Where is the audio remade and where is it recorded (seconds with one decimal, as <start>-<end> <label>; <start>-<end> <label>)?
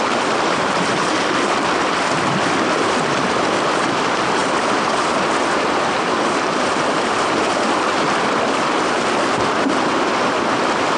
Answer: 0.0-4.4 recorded; 4.4-8.8 remade; 8.8-11.0 recorded